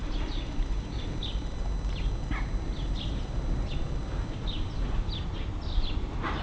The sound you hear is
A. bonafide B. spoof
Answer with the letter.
A